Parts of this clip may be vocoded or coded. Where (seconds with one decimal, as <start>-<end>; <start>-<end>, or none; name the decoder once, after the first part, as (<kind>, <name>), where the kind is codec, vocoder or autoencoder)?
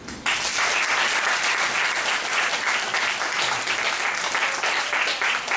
0.5-3.9 (vocoder, BigVGAN v2)